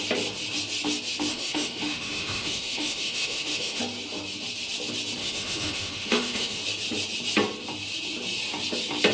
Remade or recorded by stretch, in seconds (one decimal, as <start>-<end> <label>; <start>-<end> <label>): 0.0-1.3 recorded; 1.3-3.8 remade; 3.8-5.2 recorded; 5.2-6.6 remade; 6.6-9.1 recorded